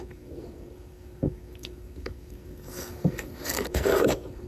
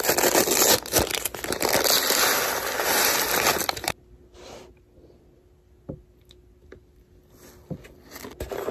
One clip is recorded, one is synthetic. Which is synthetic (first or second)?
first